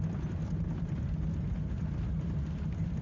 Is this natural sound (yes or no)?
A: yes